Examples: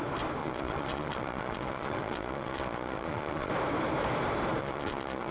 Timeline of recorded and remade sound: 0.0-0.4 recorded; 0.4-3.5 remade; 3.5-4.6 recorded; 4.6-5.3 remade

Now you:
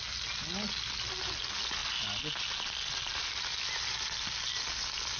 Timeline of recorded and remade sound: 0.0-5.2 recorded

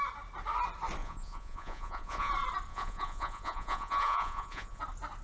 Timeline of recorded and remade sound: 0.0-1.0 recorded; 1.0-2.3 remade; 2.3-2.7 recorded; 2.7-4.8 remade; 4.8-5.2 recorded

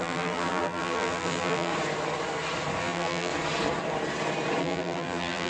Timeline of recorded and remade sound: 0.0-1.7 remade; 1.7-2.8 recorded; 2.8-3.3 remade; 3.3-4.6 recorded; 4.6-5.5 remade

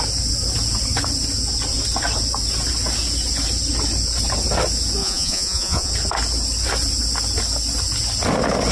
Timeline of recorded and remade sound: 0.0-5.0 recorded; 5.0-5.9 remade; 5.9-8.7 recorded

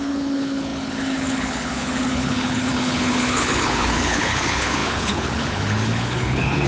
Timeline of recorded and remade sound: 0.0-6.7 remade